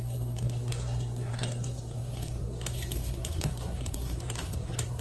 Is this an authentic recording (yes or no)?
no